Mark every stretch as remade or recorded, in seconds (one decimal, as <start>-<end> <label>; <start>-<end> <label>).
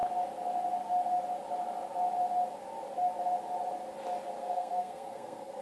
0.0-4.4 recorded; 4.4-5.6 remade